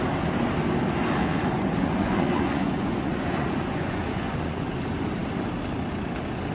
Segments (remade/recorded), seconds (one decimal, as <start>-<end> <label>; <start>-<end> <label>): 0.0-1.3 recorded; 1.3-4.7 remade; 4.7-6.5 recorded